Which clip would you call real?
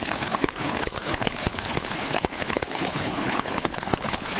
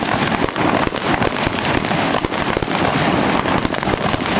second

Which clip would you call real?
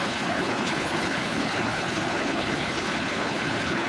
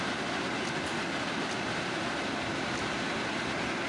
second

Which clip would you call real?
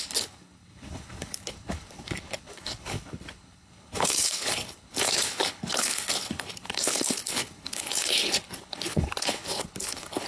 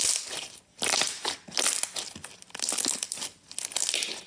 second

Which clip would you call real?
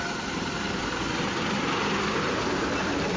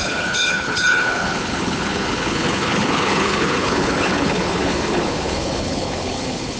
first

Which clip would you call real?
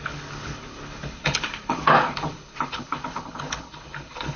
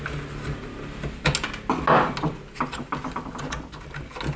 second